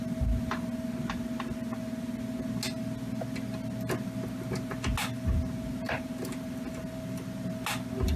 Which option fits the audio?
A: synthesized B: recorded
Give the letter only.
B